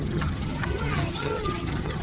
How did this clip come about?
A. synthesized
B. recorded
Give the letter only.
A